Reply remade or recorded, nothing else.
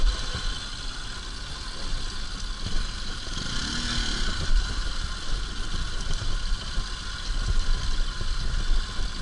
recorded